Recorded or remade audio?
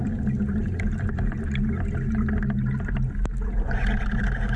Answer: recorded